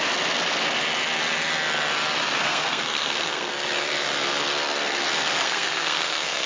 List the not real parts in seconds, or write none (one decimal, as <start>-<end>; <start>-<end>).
2.4-3.5; 5.4-6.5